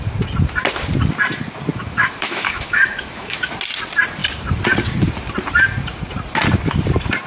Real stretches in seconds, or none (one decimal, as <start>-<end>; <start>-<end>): 0.0-1.7; 3.5-7.3